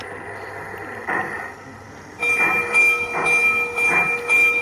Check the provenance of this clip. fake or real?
real